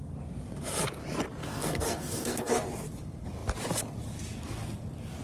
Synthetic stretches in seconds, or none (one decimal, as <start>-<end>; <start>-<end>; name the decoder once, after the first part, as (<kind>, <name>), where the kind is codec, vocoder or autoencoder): 1.4-2.5 (codec, SNAC)